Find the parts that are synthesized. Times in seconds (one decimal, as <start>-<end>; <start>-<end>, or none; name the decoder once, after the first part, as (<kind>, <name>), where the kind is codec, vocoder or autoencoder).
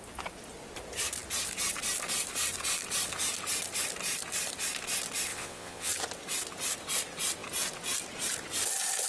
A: 5.3-5.9 (vocoder, WaveNeXt)